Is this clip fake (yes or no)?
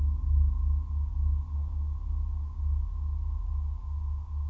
no